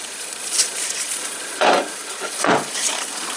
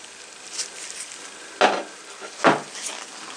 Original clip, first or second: second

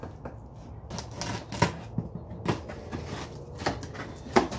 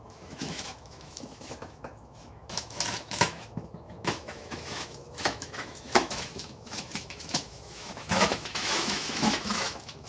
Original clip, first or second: first